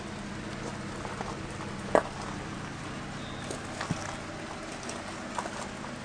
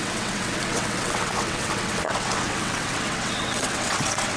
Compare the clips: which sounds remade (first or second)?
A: second